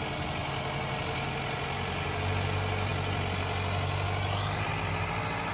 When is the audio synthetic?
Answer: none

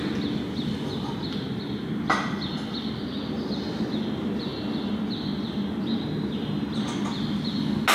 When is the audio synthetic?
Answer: none

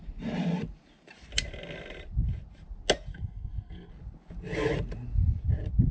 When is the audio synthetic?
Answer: 3.1-3.9 (codec, SNAC)

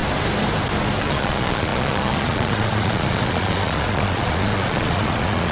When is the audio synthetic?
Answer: 1.0-5.5 (vocoder, Vocos)

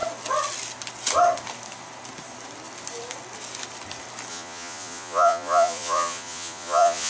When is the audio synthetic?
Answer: 4.3-7.1 (vocoder, Vocos)

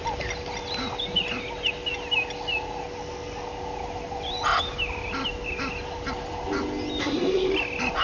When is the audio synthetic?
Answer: 7.0-7.5 (codec, SNAC)

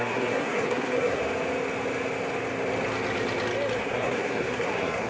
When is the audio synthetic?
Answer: 0.0-1.2 (codec, SNAC); 3.8-5.1

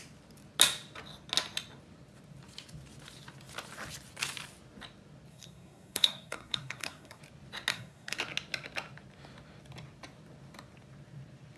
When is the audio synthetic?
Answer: 5.3-7.2 (codec, SNAC); 7.7-8.2